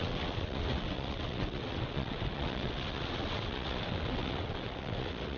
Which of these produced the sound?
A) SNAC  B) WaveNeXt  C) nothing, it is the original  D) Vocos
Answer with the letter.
B